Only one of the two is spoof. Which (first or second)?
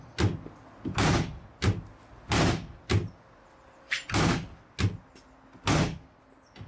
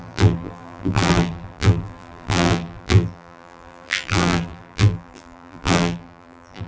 second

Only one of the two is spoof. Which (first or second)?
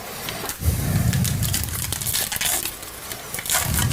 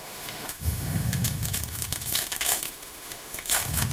second